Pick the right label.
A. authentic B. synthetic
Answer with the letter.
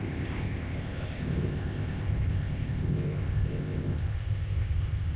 B